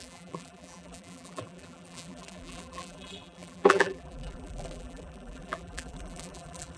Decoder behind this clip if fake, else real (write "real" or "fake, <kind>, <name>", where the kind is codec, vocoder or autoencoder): fake, vocoder, BigVGAN v2